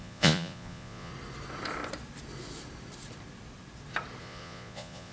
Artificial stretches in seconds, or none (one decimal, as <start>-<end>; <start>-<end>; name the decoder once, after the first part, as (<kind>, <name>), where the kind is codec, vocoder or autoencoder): 0.0-1.1 (vocoder, Vocos); 4.2-5.1